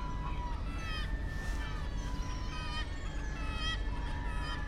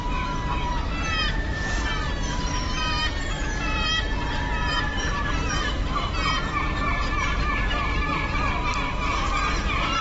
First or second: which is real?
first